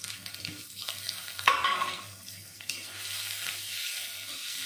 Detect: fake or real fake